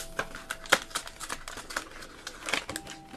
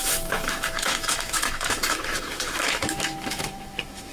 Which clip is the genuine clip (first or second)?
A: first